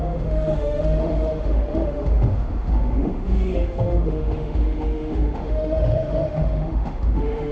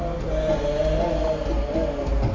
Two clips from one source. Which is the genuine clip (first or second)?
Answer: second